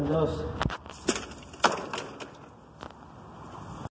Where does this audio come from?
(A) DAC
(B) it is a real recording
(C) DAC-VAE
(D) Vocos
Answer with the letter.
B